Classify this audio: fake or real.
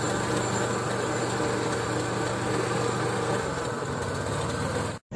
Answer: real